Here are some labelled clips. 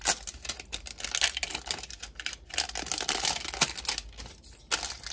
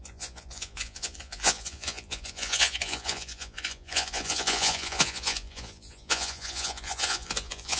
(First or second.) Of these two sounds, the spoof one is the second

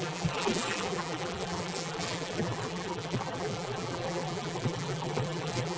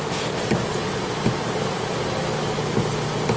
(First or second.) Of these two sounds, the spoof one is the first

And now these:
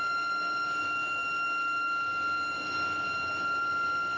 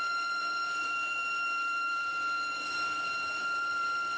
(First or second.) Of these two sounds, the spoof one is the second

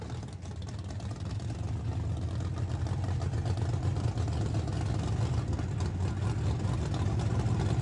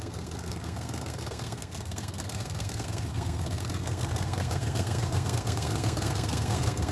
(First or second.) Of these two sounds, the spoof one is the second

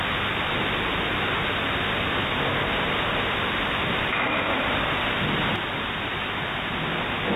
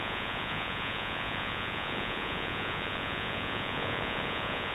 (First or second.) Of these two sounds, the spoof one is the second